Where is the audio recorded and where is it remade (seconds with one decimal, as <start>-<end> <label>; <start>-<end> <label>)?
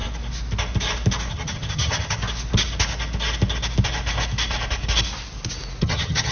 0.0-1.3 recorded; 1.3-2.2 remade; 2.2-5.8 recorded; 5.8-6.3 remade